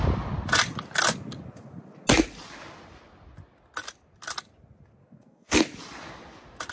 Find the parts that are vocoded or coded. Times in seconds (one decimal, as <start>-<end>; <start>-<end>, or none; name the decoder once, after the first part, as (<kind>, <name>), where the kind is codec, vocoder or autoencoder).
5.0-5.6 (codec, SNAC)